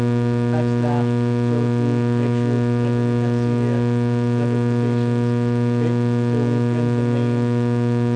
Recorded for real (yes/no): yes